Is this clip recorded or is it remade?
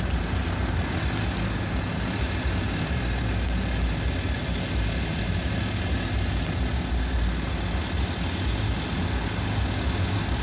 recorded